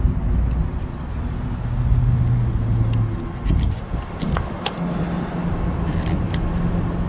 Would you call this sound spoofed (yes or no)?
no